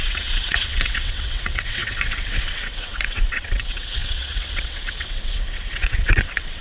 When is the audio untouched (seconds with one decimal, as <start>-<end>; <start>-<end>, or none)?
none

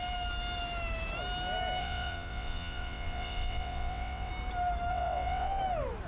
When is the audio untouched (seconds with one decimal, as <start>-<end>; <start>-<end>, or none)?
0.0-1.8; 4.3-4.9; 5.6-6.1

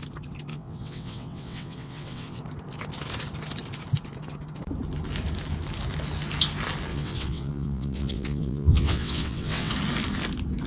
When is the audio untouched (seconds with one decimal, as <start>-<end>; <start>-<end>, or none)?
0.0-0.5; 2.4-6.9; 9.7-10.7